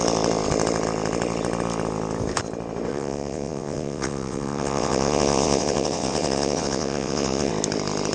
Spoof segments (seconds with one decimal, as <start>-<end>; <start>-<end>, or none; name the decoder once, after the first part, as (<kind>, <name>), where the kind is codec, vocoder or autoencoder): 2.9-7.5 (vocoder, WaveNeXt)